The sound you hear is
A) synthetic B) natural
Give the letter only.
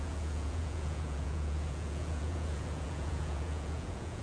A